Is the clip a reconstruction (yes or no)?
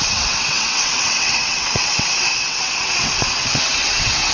yes